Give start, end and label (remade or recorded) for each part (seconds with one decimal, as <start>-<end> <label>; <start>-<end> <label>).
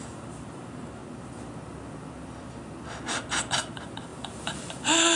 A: 0.0-1.0 remade; 1.0-3.5 recorded; 3.5-5.2 remade